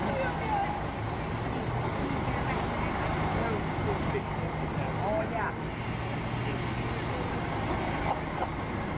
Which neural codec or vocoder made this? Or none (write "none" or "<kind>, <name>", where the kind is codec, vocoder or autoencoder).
none